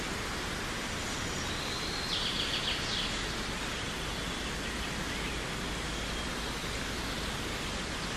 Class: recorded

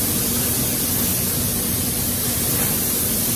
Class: recorded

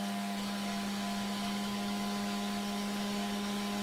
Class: remade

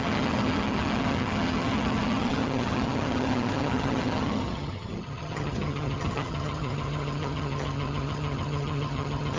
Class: remade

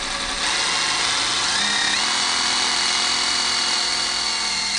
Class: recorded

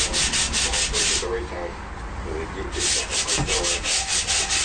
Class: recorded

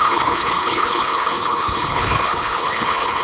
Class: remade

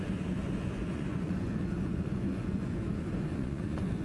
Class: remade